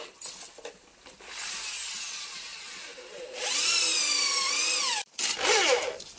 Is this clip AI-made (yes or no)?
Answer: yes